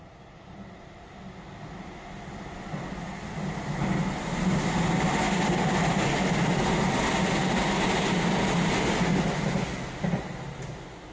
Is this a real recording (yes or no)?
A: yes